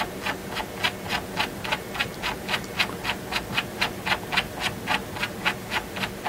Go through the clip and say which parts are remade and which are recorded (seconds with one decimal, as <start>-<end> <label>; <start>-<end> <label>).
0.0-6.3 recorded